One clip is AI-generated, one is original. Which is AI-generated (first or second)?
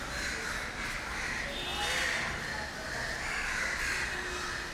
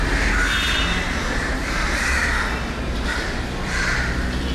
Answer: second